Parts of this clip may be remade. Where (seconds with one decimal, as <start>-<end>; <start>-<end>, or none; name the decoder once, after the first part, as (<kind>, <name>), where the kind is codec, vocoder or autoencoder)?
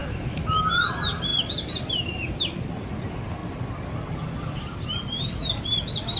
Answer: 0.0-0.6 (autoencoder, DAC-VAE)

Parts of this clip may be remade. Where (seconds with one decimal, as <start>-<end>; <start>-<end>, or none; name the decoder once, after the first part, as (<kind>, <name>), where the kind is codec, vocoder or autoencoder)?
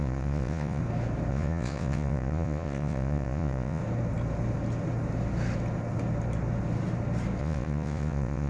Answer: 0.0-0.8 (vocoder, Vocos); 1.3-3.8; 7.4-8.5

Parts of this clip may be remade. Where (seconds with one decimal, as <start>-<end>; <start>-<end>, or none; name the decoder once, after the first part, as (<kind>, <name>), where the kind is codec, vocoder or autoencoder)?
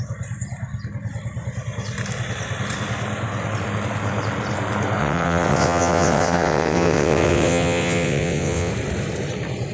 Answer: 5.0-8.7 (vocoder, WaveNeXt)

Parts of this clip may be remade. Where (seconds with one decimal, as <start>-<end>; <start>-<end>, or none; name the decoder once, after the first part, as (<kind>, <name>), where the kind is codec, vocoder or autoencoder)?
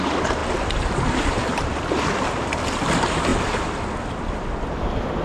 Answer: 0.4-1.8 (vocoder, BigVGAN v2)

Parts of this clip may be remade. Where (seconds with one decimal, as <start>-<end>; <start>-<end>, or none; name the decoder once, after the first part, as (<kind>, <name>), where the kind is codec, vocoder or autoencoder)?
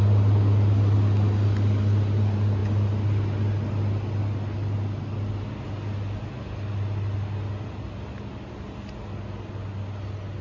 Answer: none